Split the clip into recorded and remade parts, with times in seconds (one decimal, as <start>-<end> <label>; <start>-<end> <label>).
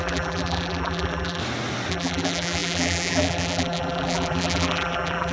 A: 0.0-1.4 remade; 1.4-1.9 recorded; 1.9-5.3 remade